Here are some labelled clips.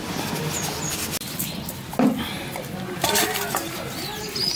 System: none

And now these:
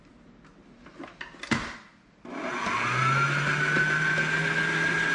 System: none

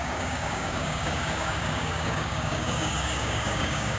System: codec, DAC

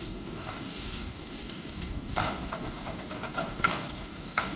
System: codec, DAC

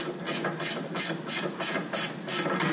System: none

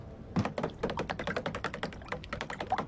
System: vocoder, BigVGAN v2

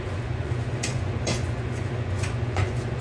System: vocoder, Vocos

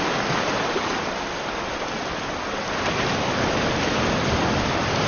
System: none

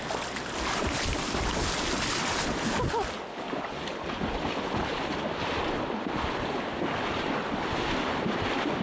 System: none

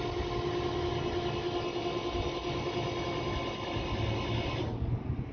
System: none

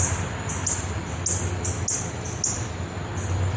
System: none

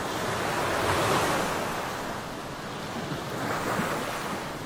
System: none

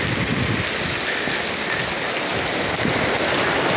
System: none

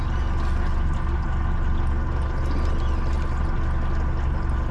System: none